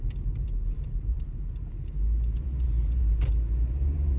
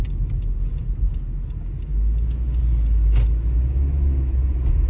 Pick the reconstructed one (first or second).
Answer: first